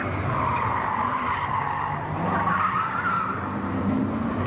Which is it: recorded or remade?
recorded